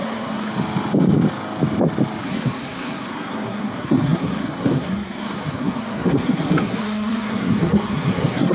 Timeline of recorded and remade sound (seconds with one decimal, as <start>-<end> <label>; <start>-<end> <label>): 0.0-0.5 remade; 0.5-2.2 recorded; 2.2-8.5 remade